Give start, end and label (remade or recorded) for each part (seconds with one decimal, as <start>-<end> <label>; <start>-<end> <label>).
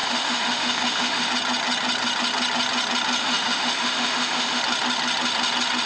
0.0-1.3 remade; 1.3-3.2 recorded; 3.2-4.6 remade; 4.6-5.9 recorded